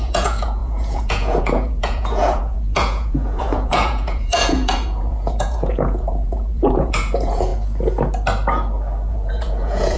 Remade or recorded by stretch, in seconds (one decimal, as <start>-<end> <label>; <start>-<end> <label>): 0.0-7.5 remade; 7.5-9.1 recorded; 9.1-10.0 remade